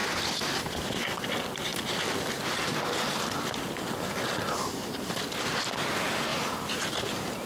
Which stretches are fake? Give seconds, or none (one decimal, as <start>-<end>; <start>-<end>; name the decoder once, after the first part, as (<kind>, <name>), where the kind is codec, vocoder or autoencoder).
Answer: 0.0-1.0 (vocoder, BigVGAN v2); 4.7-5.2; 6.3-7.5